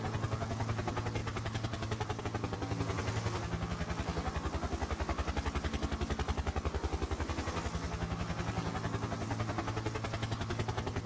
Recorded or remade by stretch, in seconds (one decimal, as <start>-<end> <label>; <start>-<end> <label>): 0.0-1.2 recorded; 1.2-2.2 remade; 2.2-11.1 recorded